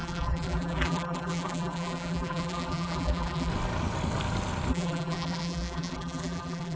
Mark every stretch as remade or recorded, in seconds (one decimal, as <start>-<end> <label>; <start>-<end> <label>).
0.0-3.5 remade; 3.5-4.7 recorded; 4.7-6.8 remade